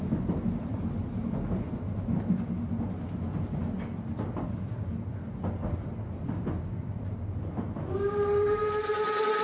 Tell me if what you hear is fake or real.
real